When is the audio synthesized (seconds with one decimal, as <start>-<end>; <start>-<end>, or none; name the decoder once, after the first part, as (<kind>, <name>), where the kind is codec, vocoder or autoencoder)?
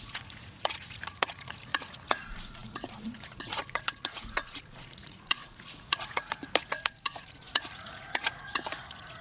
0.0-9.2 (vocoder, Vocos)